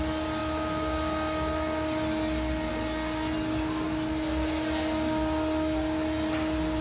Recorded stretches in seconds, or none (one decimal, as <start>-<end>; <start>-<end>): 0.0-6.8